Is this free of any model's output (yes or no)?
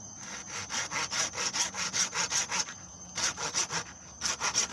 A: yes